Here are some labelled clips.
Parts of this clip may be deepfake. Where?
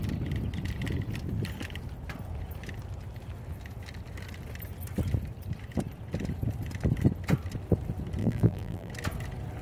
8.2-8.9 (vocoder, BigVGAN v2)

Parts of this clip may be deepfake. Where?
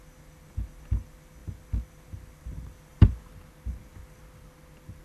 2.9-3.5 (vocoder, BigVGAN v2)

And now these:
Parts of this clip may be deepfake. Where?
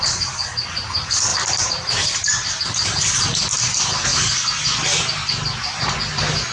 1.3-2.6 (vocoder, BigVGAN v2)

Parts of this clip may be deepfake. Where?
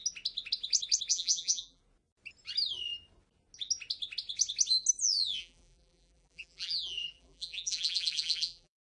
1.1-1.8 (vocoder, BigVGAN v2); 5.4-9.0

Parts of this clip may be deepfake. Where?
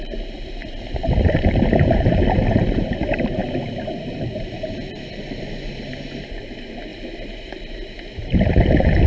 0.0-0.6 (vocoder, BigVGAN v2); 1.2-3.4; 3.9-6.9; 7.5-9.1